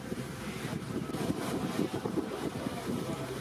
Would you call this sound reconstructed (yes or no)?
yes